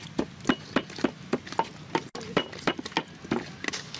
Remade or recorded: recorded